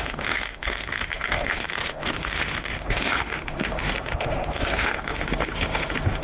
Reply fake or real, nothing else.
fake